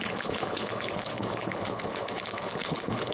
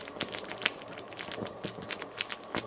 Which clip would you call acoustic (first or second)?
second